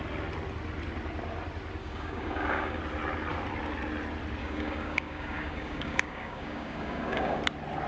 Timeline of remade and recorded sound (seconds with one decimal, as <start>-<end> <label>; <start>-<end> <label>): 0.0-1.8 recorded; 1.8-2.8 remade; 2.8-4.4 recorded; 4.4-7.4 remade; 7.4-7.9 recorded